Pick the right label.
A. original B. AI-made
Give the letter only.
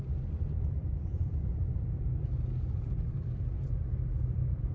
B